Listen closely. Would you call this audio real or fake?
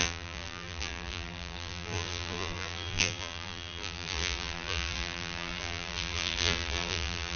fake